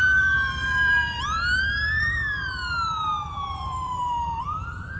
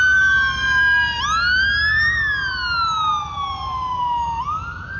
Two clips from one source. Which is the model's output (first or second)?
first